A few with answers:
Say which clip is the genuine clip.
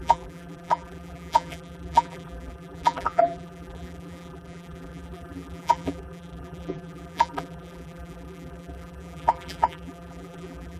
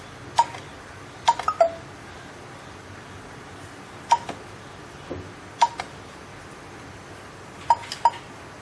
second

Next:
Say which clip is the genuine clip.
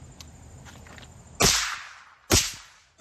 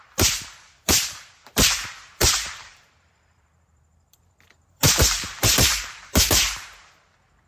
first